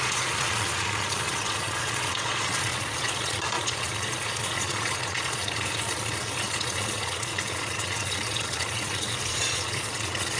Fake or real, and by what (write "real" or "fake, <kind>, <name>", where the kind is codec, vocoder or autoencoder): fake, vocoder, Vocos